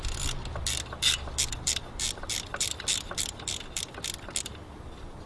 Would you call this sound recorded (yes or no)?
no